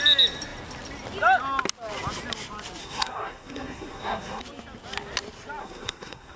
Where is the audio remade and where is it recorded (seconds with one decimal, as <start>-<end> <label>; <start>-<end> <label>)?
0.0-2.8 recorded; 2.8-4.4 remade; 4.4-5.6 recorded; 5.6-6.4 remade

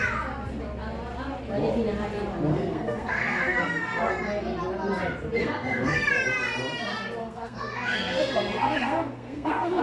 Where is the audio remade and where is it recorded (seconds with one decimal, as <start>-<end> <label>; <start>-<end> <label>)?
0.0-2.5 recorded; 2.5-4.1 remade; 4.1-5.4 recorded; 5.4-6.1 remade; 6.1-7.2 recorded; 7.2-9.8 remade

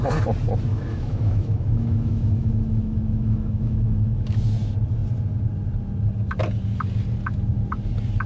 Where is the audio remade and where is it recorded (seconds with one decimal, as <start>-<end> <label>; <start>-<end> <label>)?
0.0-0.7 recorded; 0.7-4.4 remade; 4.4-8.3 recorded